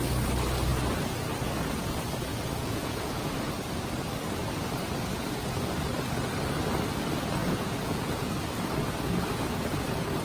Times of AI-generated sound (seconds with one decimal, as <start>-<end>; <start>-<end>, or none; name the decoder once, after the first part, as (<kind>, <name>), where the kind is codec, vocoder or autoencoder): 2.3-3.3 (vocoder, Vocos); 7.4-8.3